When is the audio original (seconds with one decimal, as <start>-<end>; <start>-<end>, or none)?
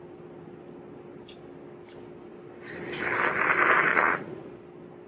0.0-3.9; 4.5-5.1